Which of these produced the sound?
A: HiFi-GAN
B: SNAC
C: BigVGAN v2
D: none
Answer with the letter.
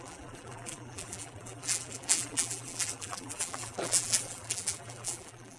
C